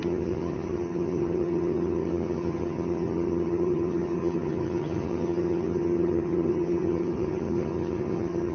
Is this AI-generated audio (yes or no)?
yes